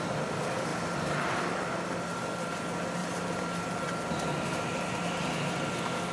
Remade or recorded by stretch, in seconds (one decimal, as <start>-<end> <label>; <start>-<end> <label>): 0.0-0.7 recorded; 0.7-1.4 remade; 1.4-3.0 recorded; 3.0-4.9 remade; 4.9-6.1 recorded

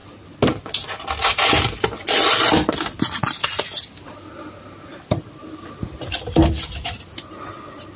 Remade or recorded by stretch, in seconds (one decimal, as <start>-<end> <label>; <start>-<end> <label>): 0.0-8.0 recorded

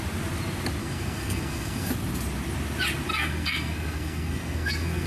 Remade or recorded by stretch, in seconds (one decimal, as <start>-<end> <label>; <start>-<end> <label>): 0.0-0.8 recorded; 0.8-1.9 remade; 1.9-3.1 recorded; 3.1-5.1 remade

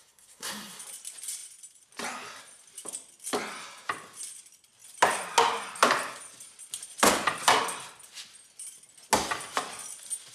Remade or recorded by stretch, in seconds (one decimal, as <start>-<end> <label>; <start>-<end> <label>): 0.0-0.8 remade; 0.8-10.3 recorded

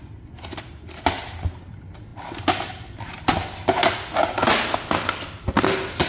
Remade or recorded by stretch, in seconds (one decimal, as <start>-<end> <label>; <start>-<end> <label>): 0.0-6.1 recorded

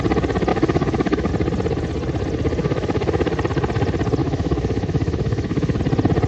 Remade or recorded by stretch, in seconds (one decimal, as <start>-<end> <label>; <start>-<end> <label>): 0.0-0.5 recorded; 0.5-1.3 remade; 1.3-2.6 recorded; 2.6-3.3 remade; 3.3-4.2 recorded; 4.2-5.8 remade; 5.8-6.3 recorded

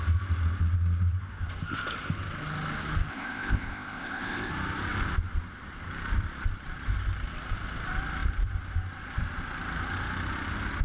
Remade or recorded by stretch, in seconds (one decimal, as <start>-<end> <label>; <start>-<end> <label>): 0.0-3.1 recorded; 3.1-4.5 remade; 4.5-10.8 recorded